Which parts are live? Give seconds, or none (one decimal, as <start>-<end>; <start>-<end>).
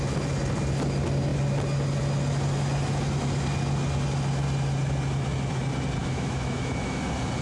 0.0-6.0; 7.0-7.4